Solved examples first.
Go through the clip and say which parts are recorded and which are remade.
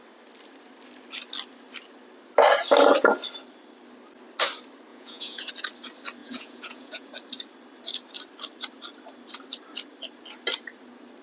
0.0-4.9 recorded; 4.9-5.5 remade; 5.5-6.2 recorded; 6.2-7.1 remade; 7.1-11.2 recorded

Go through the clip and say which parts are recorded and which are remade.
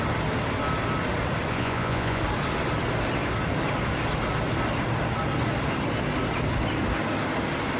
0.0-1.5 recorded; 1.5-2.2 remade; 2.2-7.8 recorded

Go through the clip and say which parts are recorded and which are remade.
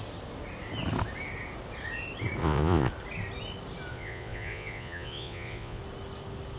0.0-2.4 recorded; 2.4-2.9 remade; 2.9-3.9 recorded; 3.9-5.8 remade; 5.8-6.6 recorded